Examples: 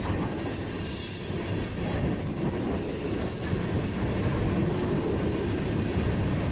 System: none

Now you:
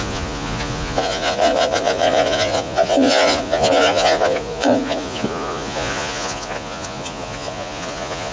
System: vocoder, Vocos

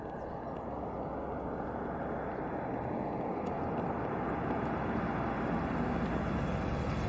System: none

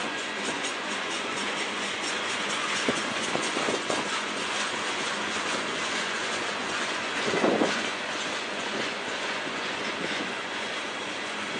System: vocoder, Vocos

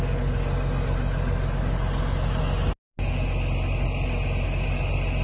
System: none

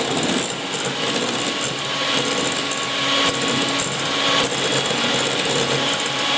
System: none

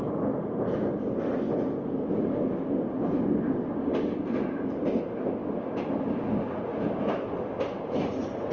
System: none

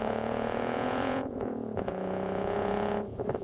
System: vocoder, Vocos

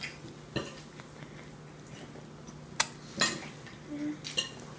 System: none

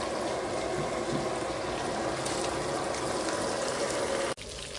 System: none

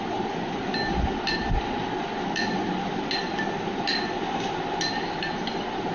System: none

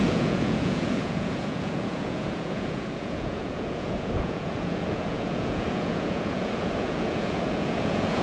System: vocoder, Vocos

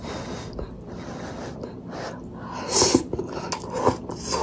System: none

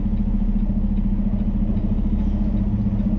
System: none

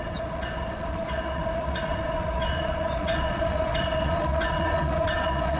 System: vocoder, Vocos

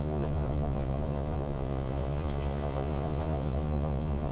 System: vocoder, Vocos